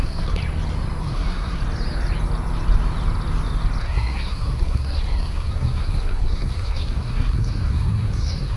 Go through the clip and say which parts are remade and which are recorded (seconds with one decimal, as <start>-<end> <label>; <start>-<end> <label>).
0.0-0.4 remade; 0.4-1.0 recorded; 1.0-1.6 remade; 1.6-3.8 recorded; 3.8-8.6 remade